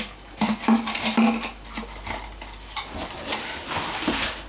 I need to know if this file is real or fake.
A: real